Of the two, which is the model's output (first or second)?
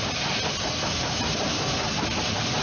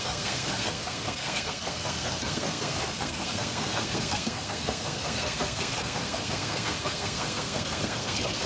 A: second